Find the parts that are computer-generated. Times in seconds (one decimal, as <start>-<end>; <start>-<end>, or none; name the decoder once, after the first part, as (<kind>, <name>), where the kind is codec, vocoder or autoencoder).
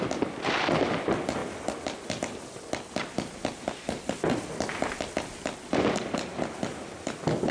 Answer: none